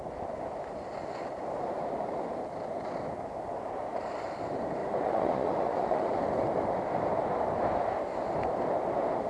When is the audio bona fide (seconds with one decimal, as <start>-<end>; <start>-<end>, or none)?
0.0-4.8; 6.2-9.3